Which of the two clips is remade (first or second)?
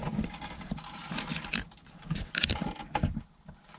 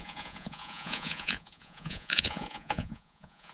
second